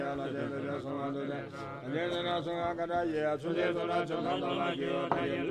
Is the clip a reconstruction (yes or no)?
no